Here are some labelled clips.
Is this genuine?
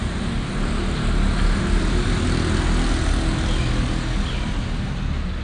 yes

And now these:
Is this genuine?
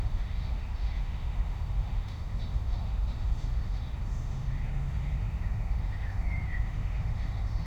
no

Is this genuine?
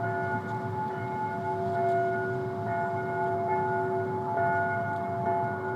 yes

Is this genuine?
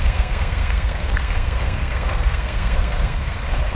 no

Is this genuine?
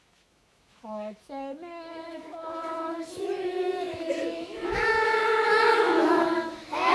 no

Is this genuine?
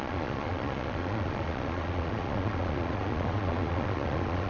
no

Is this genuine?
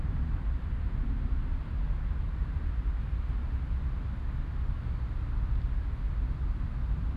yes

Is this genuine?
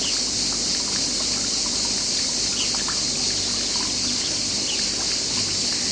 yes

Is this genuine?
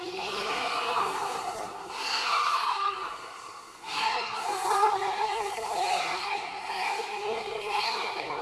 no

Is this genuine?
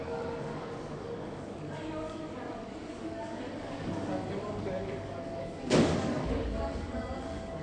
no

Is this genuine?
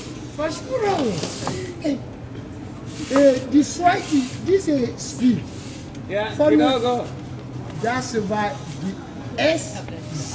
yes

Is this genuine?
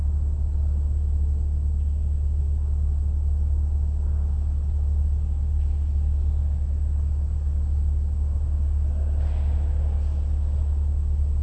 yes